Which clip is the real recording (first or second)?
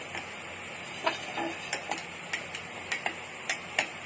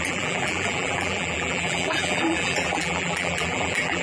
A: first